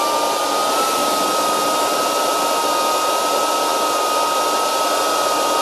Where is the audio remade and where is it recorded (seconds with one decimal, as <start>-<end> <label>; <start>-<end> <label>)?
0.0-5.6 recorded

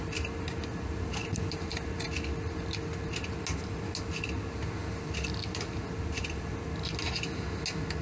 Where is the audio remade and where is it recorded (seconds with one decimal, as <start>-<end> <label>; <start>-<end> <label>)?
0.0-0.7 recorded; 0.7-1.7 remade; 1.7-4.8 recorded; 4.8-6.6 remade; 6.6-8.0 recorded

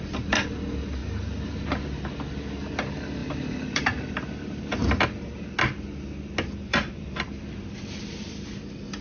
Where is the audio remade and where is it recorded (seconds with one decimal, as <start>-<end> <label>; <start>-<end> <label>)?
0.0-3.2 recorded; 3.2-5.0 remade; 5.0-6.7 recorded; 6.7-8.4 remade; 8.4-9.0 recorded